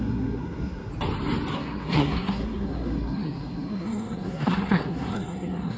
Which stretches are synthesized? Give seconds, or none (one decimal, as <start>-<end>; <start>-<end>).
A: 0.0-0.9; 1.5-5.8